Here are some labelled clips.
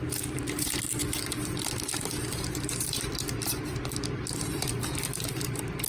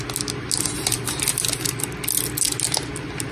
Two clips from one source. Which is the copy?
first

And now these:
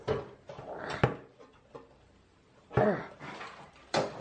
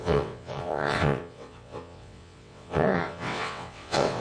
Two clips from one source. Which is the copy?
second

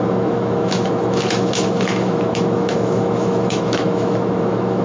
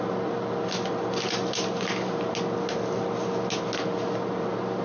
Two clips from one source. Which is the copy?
first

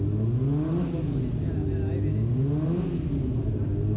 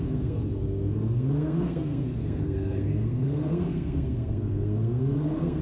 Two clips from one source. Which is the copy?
second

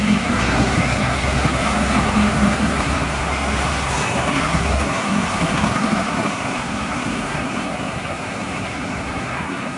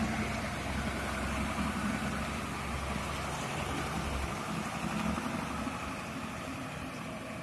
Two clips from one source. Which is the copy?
first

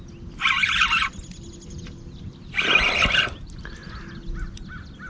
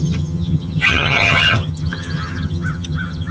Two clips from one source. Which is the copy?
second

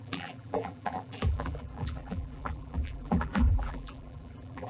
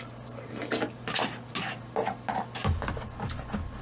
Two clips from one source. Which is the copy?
first